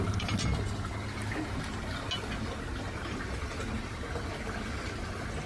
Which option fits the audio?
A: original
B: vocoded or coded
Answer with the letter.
A